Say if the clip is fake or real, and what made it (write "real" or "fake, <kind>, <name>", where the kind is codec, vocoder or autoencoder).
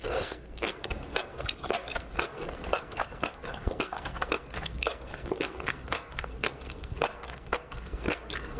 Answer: fake, codec, SNAC